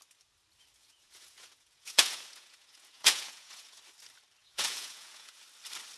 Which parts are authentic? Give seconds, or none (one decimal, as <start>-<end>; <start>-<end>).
0.0-0.8; 3.8-4.4; 5.4-6.0